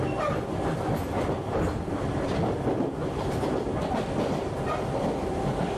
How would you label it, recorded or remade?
recorded